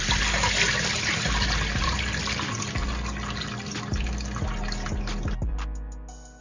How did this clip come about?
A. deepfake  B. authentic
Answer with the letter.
B